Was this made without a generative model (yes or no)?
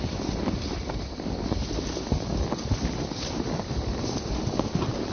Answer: yes